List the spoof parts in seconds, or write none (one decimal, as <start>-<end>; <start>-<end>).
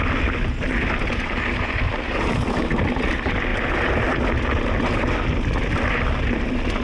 none